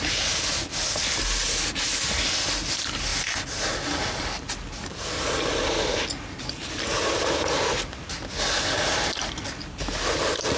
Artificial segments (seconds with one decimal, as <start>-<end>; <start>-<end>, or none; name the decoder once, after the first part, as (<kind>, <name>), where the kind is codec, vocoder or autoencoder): none